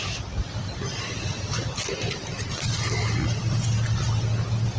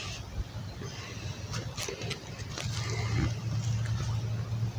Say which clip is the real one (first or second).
second